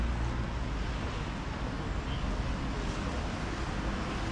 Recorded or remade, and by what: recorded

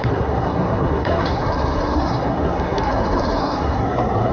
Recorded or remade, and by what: remade, codec, SNAC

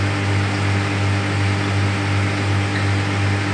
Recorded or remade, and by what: recorded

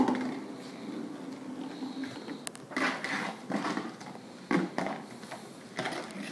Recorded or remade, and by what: recorded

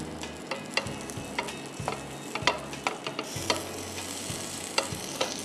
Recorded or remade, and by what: recorded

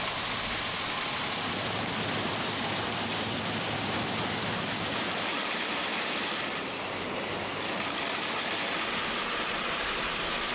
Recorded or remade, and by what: recorded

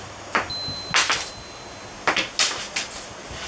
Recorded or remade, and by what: recorded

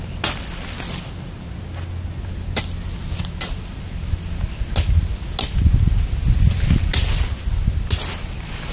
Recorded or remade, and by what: recorded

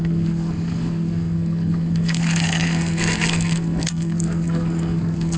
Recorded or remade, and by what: remade, codec, SNAC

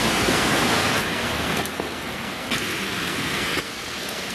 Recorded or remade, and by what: remade, codec, SNAC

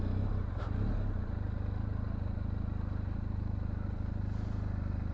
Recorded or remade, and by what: recorded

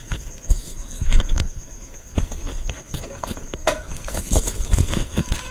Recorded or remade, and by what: remade, codec, SNAC